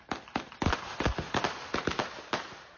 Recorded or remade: recorded